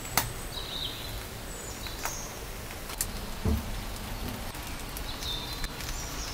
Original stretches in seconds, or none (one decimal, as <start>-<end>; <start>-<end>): 0.0-6.3